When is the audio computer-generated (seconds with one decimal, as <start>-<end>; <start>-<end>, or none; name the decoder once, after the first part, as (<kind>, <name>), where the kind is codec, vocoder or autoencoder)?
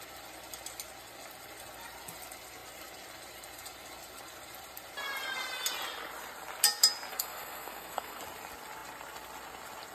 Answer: 7.1-8.2 (codec, SNAC)